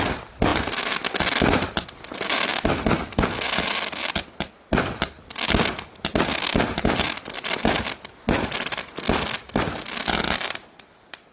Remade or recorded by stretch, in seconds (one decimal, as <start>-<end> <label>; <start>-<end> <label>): 0.0-11.3 recorded